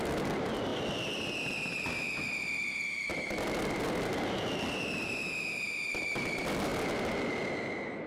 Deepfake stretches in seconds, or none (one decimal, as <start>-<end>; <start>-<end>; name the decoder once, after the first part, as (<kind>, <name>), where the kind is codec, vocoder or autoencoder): none